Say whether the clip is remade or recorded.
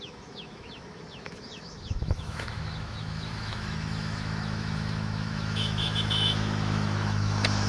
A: remade